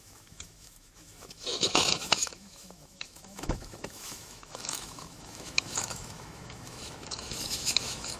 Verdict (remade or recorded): remade